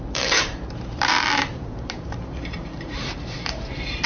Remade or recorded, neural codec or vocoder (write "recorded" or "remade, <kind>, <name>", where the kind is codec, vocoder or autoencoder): remade, vocoder, BigVGAN v2